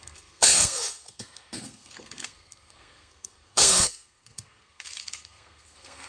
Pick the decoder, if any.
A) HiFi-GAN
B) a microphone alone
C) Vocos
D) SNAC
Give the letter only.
D